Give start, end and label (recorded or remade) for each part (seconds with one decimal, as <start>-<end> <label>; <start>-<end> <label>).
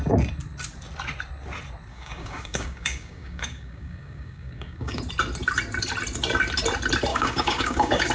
0.0-1.9 recorded; 1.9-5.0 remade; 5.0-7.1 recorded; 7.1-8.1 remade